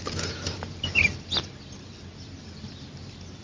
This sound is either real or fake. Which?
real